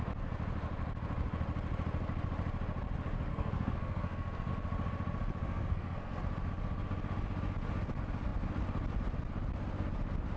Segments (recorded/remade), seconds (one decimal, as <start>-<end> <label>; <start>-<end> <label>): 0.0-3.3 recorded; 3.3-4.5 remade; 4.5-5.4 recorded; 5.4-6.2 remade; 6.2-10.4 recorded